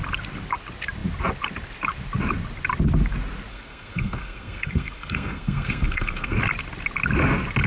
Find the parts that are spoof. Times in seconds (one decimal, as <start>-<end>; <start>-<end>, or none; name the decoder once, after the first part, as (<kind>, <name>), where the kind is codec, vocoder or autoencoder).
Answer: 3.5-6.4 (codec, SNAC)

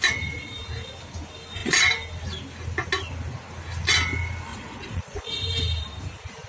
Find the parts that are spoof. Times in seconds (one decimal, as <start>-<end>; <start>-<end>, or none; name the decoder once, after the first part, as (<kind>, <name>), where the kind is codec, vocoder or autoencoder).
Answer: 4.5-5.3 (vocoder, Vocos)

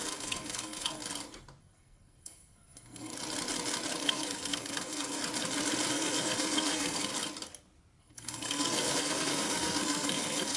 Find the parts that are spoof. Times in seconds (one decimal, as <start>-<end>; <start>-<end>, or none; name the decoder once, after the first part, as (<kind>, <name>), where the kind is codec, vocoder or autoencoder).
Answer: 0.0-1.0 (codec, SNAC); 1.6-3.1; 4.0-5.2; 5.9-7.1; 8.0-10.6

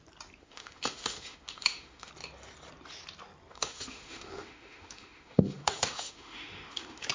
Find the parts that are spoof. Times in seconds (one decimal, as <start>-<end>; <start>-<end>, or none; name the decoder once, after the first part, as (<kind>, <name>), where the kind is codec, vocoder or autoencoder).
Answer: 0.4-2.1 (autoencoder, DAC-VAE); 3.5-7.1

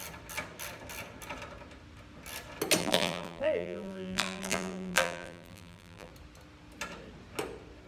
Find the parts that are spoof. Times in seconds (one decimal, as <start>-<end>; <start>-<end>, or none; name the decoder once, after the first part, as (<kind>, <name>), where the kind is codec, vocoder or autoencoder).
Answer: 2.8-6.1 (vocoder, BigVGAN v2)

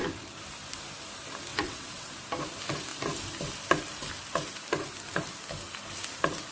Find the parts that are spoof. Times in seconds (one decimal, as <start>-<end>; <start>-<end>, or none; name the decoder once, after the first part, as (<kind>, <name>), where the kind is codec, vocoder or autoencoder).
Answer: 1.5-2.1 (vocoder, WaveNeXt)